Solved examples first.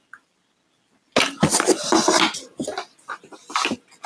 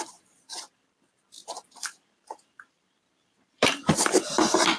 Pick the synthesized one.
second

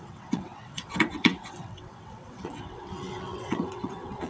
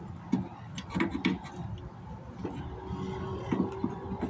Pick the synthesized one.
first